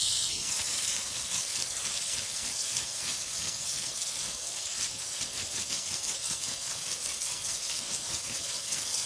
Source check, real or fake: fake